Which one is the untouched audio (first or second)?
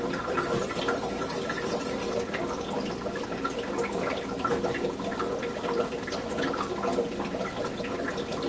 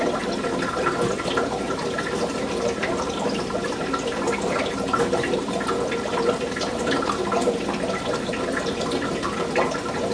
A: first